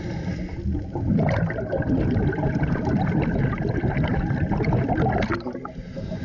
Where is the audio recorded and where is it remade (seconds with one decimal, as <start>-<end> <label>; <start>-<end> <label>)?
0.0-5.3 recorded; 5.3-6.2 remade